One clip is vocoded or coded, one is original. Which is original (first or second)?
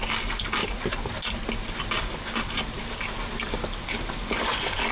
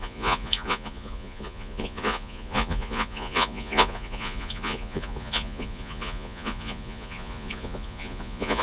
first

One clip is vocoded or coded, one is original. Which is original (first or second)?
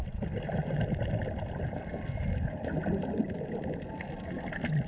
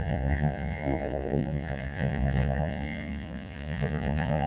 first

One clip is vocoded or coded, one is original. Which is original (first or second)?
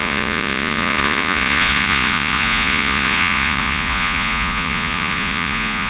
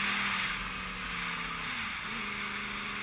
second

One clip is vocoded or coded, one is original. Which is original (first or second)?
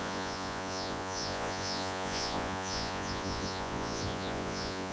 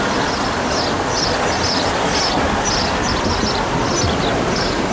second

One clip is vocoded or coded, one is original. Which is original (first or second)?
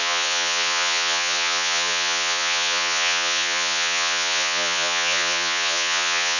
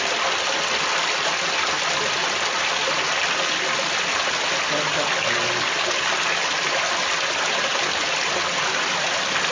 second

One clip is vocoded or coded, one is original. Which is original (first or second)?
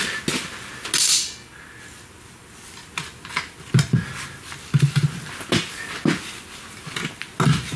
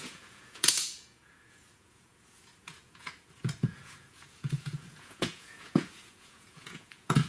first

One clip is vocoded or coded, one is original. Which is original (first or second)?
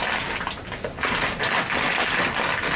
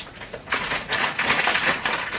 first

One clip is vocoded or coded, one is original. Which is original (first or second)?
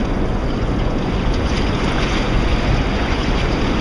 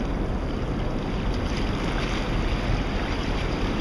second